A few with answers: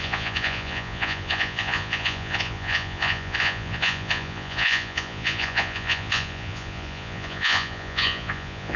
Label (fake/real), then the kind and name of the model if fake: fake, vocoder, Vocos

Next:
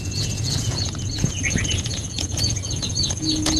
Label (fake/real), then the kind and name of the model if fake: fake, vocoder, Vocos